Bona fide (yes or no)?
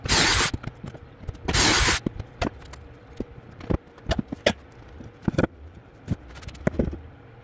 yes